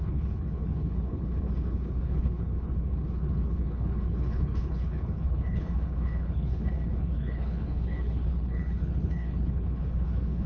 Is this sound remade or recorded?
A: remade